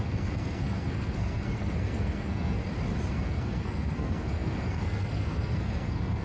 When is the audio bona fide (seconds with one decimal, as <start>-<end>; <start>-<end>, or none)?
2.6-3.1